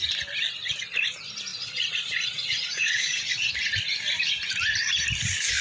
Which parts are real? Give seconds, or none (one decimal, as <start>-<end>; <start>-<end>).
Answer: 0.0-1.5; 3.5-5.6